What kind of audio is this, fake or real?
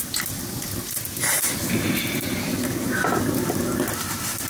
real